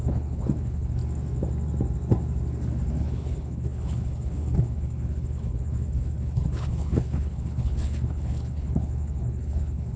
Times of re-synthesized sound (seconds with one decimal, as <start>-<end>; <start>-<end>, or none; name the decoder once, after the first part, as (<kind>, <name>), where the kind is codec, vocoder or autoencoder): 0.0-1.0 (codec, HILCodec); 3.0-10.0